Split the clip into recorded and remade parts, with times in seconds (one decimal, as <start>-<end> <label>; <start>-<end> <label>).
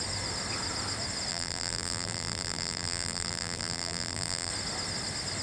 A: 0.0-1.3 recorded; 1.3-4.5 remade; 4.5-5.4 recorded